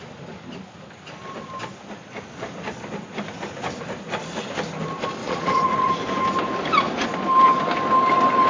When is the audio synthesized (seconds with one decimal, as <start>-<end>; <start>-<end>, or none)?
5.2-5.9

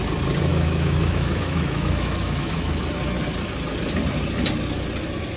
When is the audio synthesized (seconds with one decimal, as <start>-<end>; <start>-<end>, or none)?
0.5-2.8

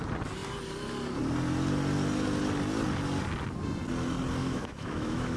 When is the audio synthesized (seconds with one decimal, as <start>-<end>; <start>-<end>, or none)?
4.4-5.4

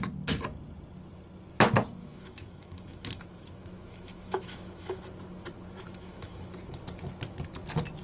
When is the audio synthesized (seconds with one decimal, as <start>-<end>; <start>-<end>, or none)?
2.0-5.0; 5.9-6.5